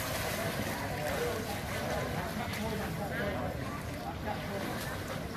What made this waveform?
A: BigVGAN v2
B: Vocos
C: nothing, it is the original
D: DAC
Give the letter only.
C